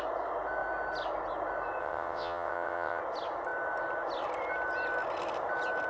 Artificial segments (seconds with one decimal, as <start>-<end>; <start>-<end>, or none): 1.8-3.0